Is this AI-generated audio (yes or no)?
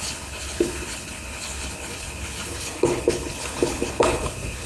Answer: yes